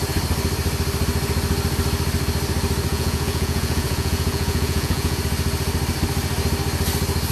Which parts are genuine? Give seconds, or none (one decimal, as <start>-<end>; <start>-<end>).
0.0-2.9; 5.2-7.3